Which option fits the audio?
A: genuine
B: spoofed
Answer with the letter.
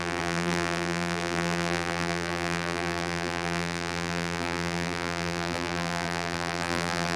B